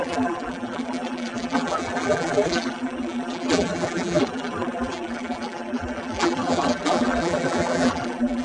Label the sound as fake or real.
fake